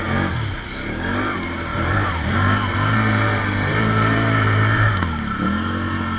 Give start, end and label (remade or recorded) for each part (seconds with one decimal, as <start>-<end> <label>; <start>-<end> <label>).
0.0-1.7 recorded; 1.7-5.4 remade; 5.4-6.2 recorded